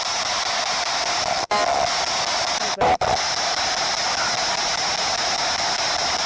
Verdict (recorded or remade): recorded